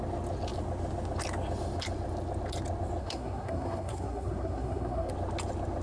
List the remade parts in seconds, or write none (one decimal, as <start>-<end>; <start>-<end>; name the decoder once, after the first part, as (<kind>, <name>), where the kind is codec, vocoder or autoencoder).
3.0-5.1 (codec, SNAC)

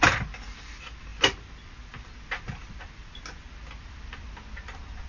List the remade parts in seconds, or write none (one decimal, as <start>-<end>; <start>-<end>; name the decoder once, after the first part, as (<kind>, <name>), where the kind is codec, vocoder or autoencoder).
none

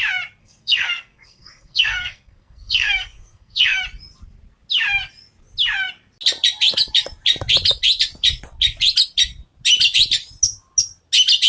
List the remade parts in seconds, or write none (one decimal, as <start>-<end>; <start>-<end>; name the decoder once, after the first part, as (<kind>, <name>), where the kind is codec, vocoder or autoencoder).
0.4-3.8 (codec, SNAC)

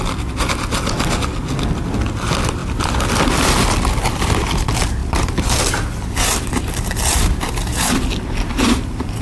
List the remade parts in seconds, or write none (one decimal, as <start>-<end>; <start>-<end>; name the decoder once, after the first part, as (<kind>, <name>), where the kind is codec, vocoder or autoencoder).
5.0-9.2 (vocoder, BigVGAN v2)